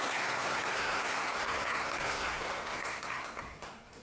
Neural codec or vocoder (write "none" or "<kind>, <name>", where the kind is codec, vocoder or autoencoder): codec, SNAC